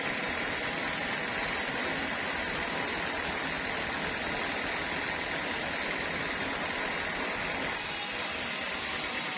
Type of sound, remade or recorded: recorded